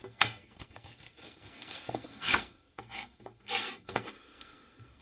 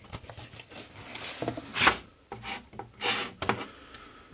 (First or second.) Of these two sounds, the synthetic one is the first